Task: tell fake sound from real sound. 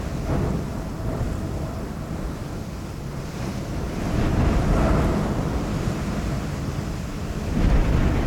real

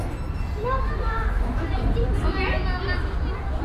real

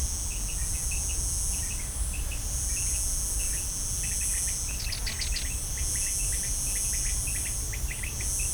real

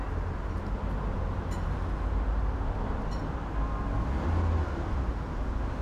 real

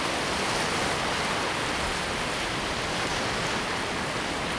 real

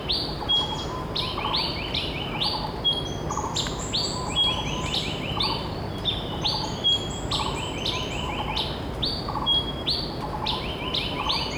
real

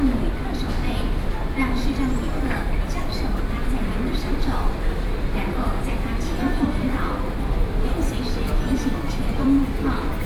fake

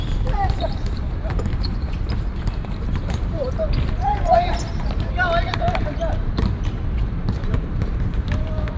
fake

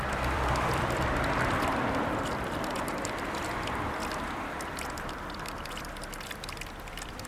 fake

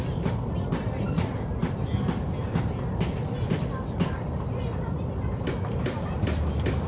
fake